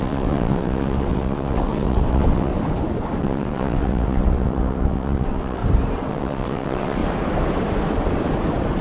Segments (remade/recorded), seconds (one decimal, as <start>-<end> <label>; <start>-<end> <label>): 0.0-2.5 remade; 2.5-3.2 recorded; 3.2-5.6 remade; 5.6-6.1 recorded; 6.1-7.0 remade; 7.0-8.8 recorded

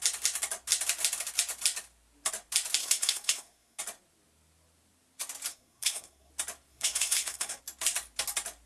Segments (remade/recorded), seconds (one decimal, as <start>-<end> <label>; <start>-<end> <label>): 0.0-2.8 recorded; 2.8-3.8 remade; 3.8-5.5 recorded; 5.5-6.3 remade; 6.3-6.7 recorded; 6.7-7.6 remade; 7.6-8.7 recorded

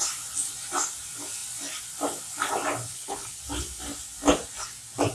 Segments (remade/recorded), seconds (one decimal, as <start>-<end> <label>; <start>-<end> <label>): 0.0-2.9 recorded; 2.9-3.4 remade; 3.4-5.1 recorded

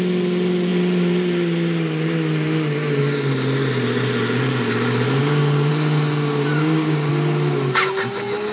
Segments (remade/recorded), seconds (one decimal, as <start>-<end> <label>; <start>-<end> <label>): 0.0-5.2 recorded; 5.2-5.7 remade; 5.7-6.5 recorded; 6.5-7.1 remade; 7.1-8.5 recorded

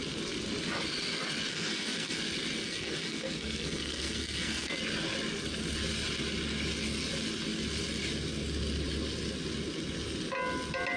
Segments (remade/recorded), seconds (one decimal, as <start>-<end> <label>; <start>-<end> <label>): 0.0-1.5 recorded; 1.5-2.2 remade; 2.2-2.6 recorded; 2.6-4.7 remade; 4.7-11.0 recorded